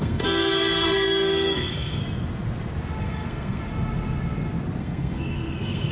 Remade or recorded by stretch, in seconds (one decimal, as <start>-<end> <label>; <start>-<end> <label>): 0.0-2.0 remade; 2.0-3.0 recorded; 3.0-3.7 remade; 3.7-4.8 recorded; 4.8-5.9 remade